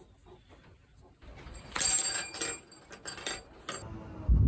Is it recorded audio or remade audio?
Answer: recorded